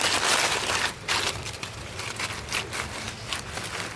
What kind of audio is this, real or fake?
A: real